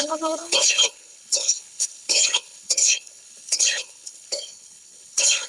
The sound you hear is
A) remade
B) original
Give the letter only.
A